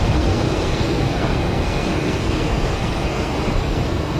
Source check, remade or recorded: remade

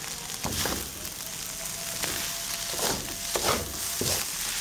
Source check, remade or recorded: recorded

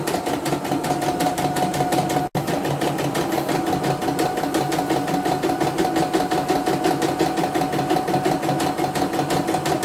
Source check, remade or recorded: recorded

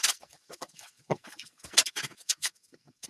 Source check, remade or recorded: remade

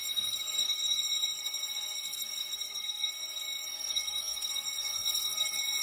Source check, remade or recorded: remade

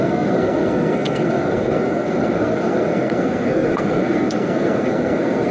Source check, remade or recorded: remade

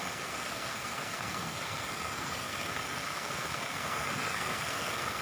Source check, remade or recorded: remade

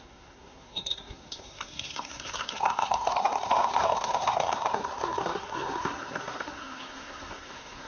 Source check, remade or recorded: remade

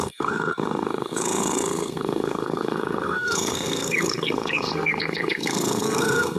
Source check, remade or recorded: remade